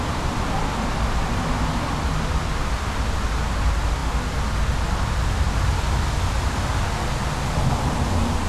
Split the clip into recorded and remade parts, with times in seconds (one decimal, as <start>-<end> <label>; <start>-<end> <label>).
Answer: 0.0-8.5 recorded

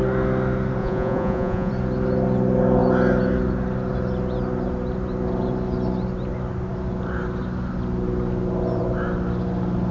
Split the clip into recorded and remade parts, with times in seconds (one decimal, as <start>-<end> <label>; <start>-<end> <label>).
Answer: 0.0-0.8 recorded; 0.8-1.7 remade; 1.7-9.9 recorded

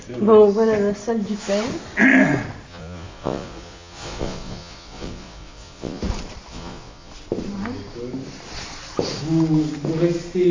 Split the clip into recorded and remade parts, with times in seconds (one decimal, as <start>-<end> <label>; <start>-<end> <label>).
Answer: 0.0-2.7 recorded; 2.7-6.0 remade; 6.0-6.5 recorded; 6.5-7.1 remade; 7.1-10.5 recorded

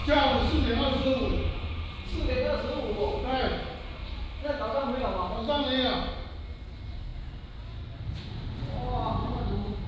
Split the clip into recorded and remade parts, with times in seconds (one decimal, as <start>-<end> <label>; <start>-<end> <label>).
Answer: 0.0-1.7 remade; 1.7-2.1 recorded; 2.1-3.4 remade; 3.4-9.2 recorded; 9.2-9.9 remade

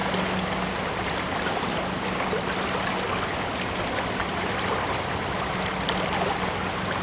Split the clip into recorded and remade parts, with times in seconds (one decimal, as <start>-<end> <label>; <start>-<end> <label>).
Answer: 0.0-7.0 recorded

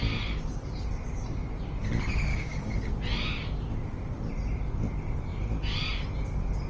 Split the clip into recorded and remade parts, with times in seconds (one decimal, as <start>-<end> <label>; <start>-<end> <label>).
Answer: 0.0-2.3 recorded; 2.3-2.9 remade; 2.9-6.7 recorded

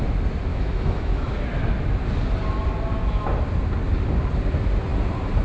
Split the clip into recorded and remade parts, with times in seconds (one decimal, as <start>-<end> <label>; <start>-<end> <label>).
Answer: 0.0-0.5 recorded; 0.5-1.3 remade; 1.3-5.4 recorded

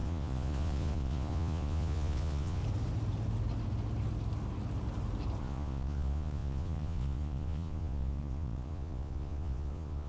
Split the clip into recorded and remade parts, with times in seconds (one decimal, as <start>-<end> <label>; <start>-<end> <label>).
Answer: 0.0-2.6 remade; 2.6-5.4 recorded; 5.4-10.1 remade